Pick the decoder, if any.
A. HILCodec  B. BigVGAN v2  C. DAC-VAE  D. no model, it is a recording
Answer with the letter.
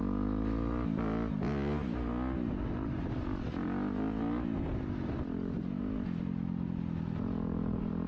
D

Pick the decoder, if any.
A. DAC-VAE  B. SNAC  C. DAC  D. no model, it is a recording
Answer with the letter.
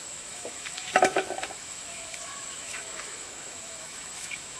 A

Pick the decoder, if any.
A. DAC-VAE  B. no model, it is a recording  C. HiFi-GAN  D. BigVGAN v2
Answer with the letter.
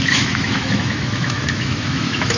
A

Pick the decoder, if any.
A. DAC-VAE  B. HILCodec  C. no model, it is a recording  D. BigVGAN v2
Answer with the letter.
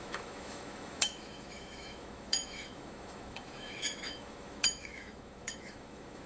A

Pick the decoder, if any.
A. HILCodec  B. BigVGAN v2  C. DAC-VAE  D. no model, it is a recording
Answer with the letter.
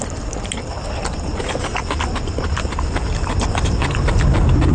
D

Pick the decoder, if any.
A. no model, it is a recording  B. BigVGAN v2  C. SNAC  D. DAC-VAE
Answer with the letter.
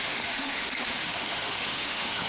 D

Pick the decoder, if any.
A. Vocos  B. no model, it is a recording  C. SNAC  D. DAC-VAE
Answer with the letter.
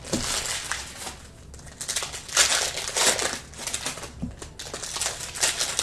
B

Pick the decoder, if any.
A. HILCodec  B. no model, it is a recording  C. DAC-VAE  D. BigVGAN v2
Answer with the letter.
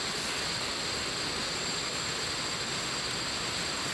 B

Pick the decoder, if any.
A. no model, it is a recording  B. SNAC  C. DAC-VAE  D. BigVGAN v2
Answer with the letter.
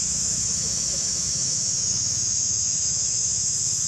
C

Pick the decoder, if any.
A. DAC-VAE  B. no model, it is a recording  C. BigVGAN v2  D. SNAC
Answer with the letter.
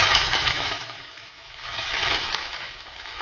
A